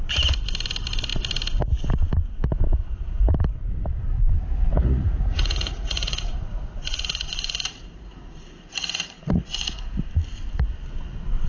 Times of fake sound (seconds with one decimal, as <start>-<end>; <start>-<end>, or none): 2.8-3.3; 4.7-9.8